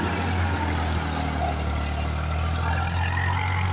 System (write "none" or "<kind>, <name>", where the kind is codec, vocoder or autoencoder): none